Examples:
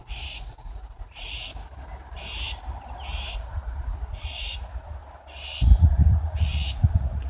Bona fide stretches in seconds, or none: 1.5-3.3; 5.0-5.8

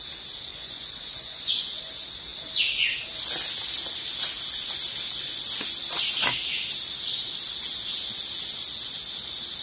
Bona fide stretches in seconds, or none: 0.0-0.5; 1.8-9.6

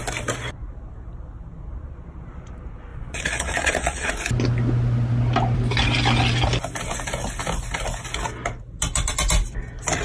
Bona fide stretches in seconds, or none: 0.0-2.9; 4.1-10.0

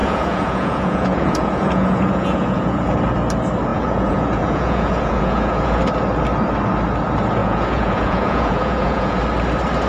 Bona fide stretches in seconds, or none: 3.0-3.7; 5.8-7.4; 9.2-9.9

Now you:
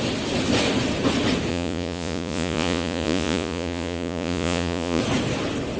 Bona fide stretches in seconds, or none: 0.0-1.5; 5.0-5.8

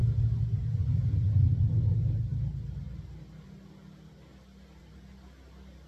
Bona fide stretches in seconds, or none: 0.0-5.9

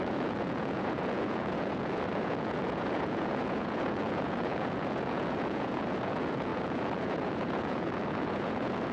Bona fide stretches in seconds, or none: none

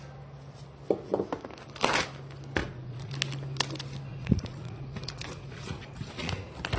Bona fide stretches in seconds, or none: 0.0-2.6; 3.1-4.1; 6.2-6.8